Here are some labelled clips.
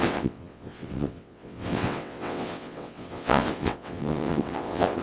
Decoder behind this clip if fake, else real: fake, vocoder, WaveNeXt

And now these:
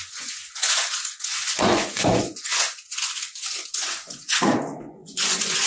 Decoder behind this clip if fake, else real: fake, vocoder, Vocos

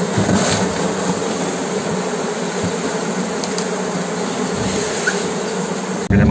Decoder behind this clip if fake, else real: real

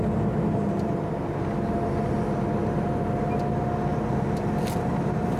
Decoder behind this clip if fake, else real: real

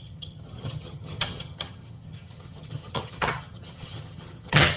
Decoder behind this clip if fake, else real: fake, vocoder, HiFi-GAN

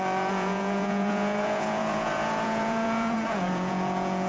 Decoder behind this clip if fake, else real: fake, vocoder, Vocos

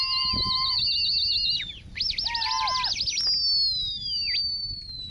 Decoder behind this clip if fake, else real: real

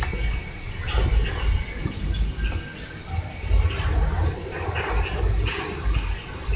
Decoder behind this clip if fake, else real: real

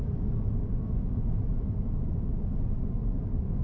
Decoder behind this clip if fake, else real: real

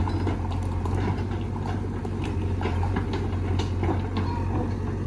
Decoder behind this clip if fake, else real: real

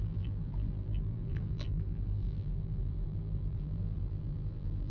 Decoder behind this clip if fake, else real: fake, vocoder, BigVGAN v2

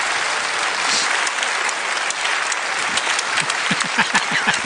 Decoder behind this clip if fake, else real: real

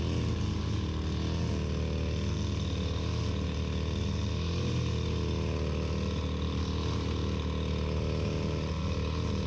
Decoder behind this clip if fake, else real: real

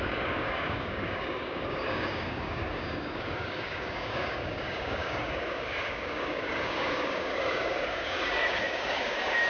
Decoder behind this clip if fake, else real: fake, codec, DAC